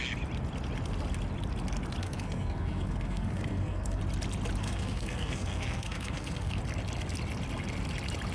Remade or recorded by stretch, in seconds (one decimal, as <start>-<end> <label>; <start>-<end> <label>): 0.0-2.0 recorded; 2.0-4.0 remade; 4.0-4.6 recorded; 4.6-6.6 remade; 6.6-8.3 recorded